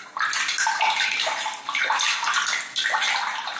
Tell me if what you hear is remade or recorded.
recorded